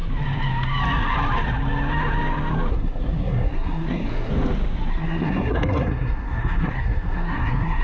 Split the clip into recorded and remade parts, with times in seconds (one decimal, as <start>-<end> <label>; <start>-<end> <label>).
0.0-2.7 recorded; 2.7-4.3 remade; 4.3-4.9 recorded; 4.9-7.8 remade